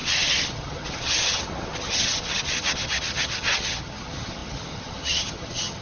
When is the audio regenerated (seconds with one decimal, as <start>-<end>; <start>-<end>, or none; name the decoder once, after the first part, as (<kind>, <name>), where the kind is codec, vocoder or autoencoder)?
0.0-5.8 (vocoder, HiFi-GAN)